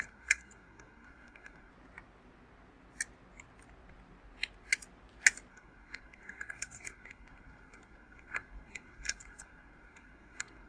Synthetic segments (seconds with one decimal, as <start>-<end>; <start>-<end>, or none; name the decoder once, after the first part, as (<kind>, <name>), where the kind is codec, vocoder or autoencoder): 0.0-1.7 (codec, SNAC); 5.5-10.7